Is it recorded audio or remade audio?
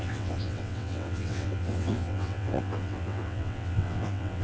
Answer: remade